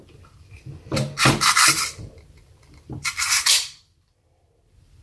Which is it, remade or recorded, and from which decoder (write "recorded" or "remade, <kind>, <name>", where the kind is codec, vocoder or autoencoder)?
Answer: remade, vocoder, BigVGAN v2